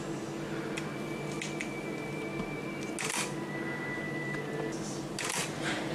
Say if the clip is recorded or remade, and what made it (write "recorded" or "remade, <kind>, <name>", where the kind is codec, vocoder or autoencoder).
recorded